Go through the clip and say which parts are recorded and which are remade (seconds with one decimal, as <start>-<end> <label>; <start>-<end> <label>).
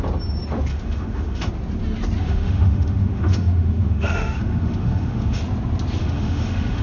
0.0-0.7 recorded; 0.7-1.5 remade; 1.5-2.2 recorded; 2.2-5.4 remade; 5.4-6.0 recorded; 6.0-6.8 remade